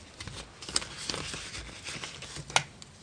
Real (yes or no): yes